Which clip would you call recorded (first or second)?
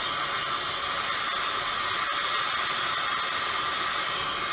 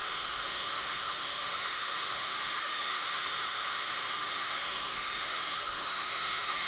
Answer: first